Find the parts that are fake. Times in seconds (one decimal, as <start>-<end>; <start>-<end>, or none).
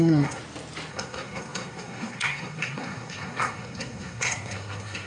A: 0.0-0.4; 0.9-5.1